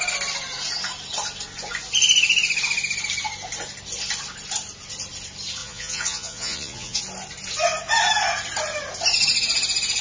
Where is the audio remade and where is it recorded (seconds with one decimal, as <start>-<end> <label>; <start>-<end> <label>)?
0.0-5.6 recorded; 5.6-7.0 remade; 7.0-10.0 recorded